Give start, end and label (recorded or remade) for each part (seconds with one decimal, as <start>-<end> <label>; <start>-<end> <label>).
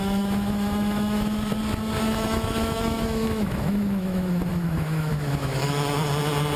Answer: 0.0-1.5 remade; 1.5-2.0 recorded; 2.0-6.0 remade; 6.0-6.6 recorded